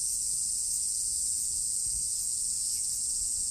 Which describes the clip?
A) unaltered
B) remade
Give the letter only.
B